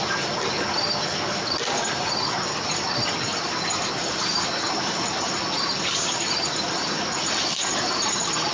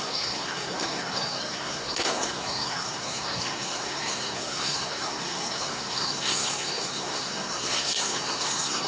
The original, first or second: first